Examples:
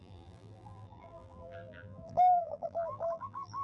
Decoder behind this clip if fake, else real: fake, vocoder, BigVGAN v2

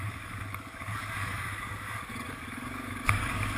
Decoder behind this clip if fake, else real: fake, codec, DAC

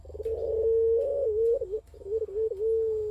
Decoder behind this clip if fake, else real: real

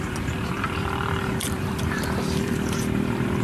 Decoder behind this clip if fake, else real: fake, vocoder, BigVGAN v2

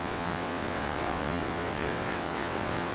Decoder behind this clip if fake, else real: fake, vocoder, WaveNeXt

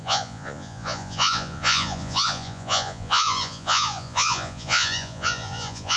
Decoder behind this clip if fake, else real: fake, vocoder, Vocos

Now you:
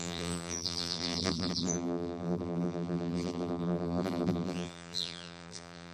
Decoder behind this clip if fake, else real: fake, vocoder, BigVGAN v2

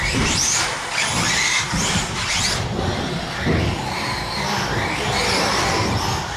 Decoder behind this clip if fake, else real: real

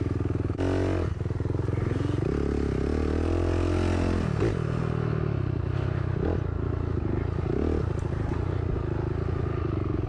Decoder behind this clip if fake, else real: real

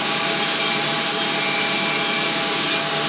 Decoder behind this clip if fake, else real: real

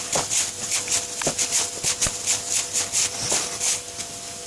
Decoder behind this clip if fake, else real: real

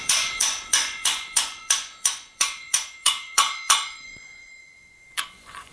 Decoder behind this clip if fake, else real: fake, vocoder, Vocos